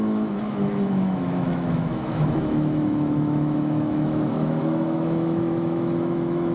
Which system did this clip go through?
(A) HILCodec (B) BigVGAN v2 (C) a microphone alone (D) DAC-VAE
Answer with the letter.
D